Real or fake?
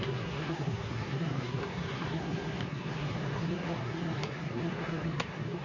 fake